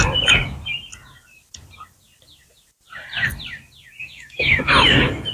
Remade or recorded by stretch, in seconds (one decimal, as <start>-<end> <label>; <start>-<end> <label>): 0.0-4.0 recorded; 4.0-4.6 remade; 4.6-5.3 recorded